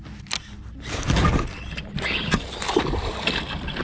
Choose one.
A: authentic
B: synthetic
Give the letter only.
A